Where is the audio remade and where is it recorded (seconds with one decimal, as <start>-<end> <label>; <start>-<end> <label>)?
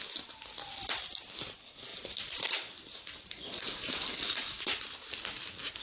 0.0-1.9 recorded; 1.9-4.6 remade; 4.6-5.8 recorded